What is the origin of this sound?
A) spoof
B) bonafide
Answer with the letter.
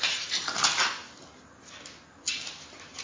B